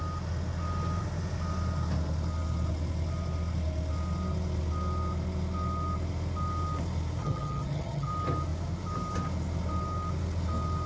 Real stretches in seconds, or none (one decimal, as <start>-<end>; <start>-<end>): 0.0-7.2; 8.1-10.9